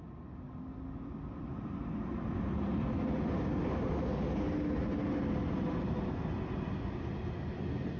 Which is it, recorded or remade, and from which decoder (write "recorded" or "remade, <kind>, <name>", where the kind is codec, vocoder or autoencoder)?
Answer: recorded